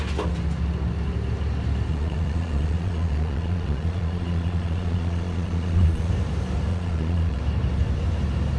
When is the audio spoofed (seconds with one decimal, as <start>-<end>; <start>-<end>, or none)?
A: 1.9-6.1; 6.7-7.4